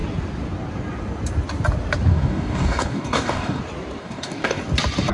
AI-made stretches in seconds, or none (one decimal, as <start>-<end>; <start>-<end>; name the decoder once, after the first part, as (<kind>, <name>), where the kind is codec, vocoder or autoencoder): 2.1-3.6 (codec, DAC); 4.0-4.6